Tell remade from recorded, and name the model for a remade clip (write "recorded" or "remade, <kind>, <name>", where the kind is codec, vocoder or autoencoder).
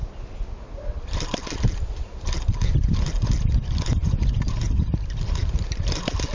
recorded